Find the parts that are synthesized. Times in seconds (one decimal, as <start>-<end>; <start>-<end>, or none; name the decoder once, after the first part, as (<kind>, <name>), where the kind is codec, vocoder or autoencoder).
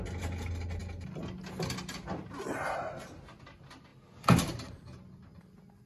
none